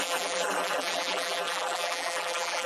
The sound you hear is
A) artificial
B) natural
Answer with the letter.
A